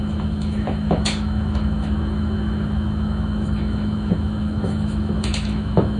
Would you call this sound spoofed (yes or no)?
yes